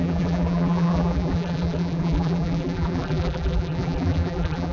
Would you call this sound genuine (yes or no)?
no